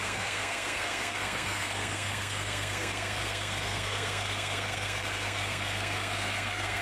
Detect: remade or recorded remade